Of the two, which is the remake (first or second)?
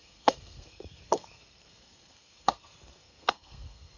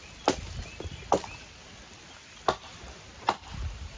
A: first